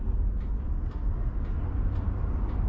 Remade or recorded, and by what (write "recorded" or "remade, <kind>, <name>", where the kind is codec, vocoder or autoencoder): recorded